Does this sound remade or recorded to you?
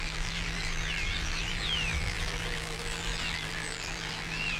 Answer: remade